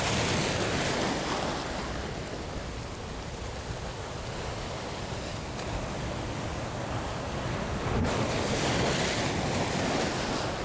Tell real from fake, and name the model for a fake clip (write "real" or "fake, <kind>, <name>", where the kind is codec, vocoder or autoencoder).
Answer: real